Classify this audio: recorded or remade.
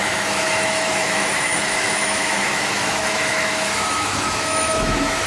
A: remade